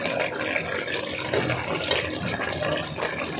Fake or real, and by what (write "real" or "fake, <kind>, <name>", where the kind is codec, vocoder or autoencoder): real